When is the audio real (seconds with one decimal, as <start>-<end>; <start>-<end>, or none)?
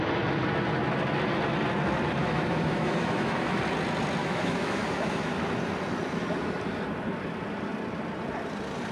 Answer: 0.0-2.2; 3.6-4.2; 5.3-8.9